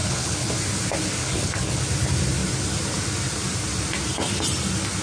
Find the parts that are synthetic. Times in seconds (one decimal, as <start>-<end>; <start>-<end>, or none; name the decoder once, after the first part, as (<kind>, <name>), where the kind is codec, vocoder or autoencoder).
0.0-0.6 (codec, HILCodec); 1.2-1.8